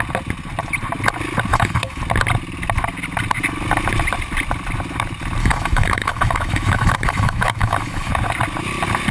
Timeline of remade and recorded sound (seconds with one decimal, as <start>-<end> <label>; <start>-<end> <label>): 0.0-1.5 recorded; 1.5-2.0 remade; 2.0-5.4 recorded; 5.4-8.1 remade; 8.1-9.1 recorded